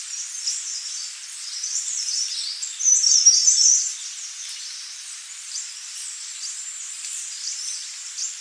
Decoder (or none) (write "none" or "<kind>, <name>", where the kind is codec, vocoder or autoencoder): vocoder, BigVGAN v2